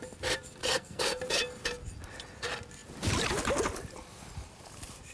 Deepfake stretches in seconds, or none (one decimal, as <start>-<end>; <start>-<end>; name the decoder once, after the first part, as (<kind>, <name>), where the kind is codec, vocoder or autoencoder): 0.6-1.2 (codec, SNAC)